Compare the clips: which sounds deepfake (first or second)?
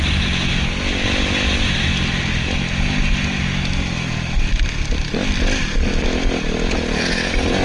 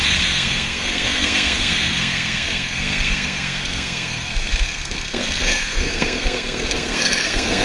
second